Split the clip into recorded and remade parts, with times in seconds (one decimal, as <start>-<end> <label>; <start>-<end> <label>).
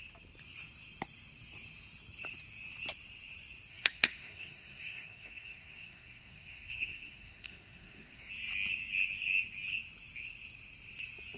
0.0-3.7 recorded; 3.7-8.3 remade; 8.3-11.4 recorded